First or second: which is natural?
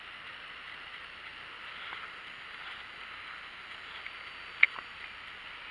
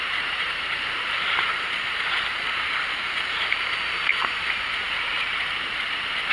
first